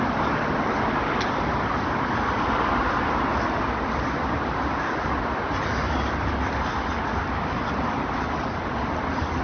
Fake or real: real